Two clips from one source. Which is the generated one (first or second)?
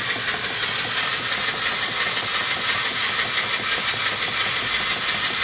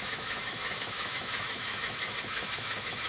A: second